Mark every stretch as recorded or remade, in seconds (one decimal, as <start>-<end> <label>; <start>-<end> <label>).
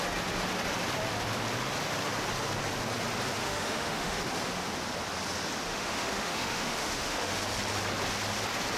0.0-3.4 recorded; 3.4-4.2 remade; 4.2-5.7 recorded; 5.7-7.4 remade; 7.4-8.8 recorded